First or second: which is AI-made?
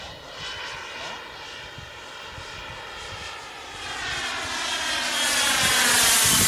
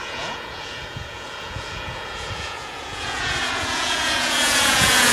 second